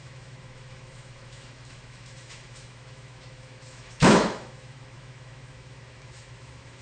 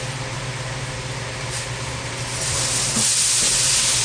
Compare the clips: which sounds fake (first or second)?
first